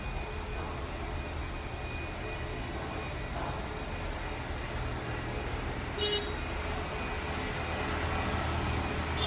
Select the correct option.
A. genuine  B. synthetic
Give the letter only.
A